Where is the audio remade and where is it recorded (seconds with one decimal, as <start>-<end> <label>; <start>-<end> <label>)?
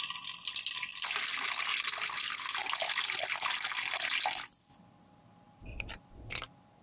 0.0-6.8 recorded